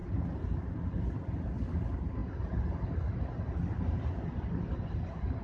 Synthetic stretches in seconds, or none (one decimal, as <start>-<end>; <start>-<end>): none